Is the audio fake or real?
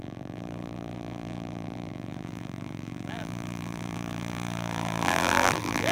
fake